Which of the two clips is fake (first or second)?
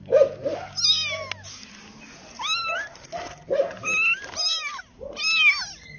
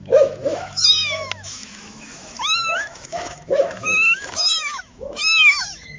second